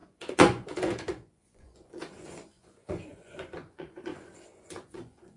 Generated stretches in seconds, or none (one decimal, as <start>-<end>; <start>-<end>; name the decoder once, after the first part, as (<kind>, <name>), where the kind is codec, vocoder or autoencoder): 0.0-5.4 (vocoder, Vocos)